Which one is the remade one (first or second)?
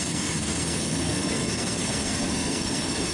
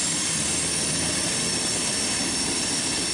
first